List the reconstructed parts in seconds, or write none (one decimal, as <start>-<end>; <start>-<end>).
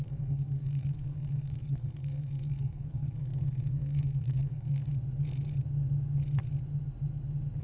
0.0-4.9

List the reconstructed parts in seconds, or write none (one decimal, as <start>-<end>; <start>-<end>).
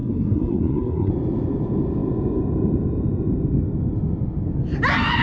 0.0-1.1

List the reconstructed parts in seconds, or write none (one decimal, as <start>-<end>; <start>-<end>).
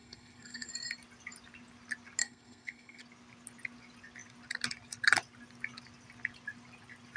0.0-0.7; 2.2-3.0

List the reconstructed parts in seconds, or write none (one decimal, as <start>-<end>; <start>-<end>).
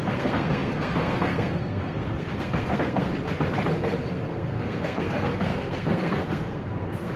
0.0-3.1; 4.1-7.2